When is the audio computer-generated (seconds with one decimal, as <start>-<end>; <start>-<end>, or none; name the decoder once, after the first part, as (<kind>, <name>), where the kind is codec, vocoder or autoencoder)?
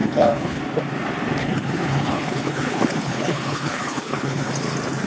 0.0-0.6 (codec, HILCodec); 1.4-4.5